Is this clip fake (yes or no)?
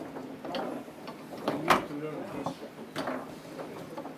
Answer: no